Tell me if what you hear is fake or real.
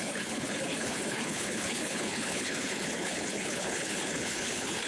fake